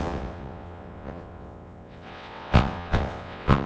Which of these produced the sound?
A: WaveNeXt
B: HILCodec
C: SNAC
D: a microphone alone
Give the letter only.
A